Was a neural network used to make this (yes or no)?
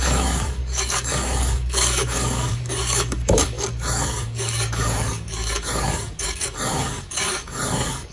yes